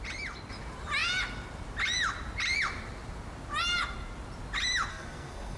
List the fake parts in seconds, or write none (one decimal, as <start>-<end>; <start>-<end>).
4.9-5.6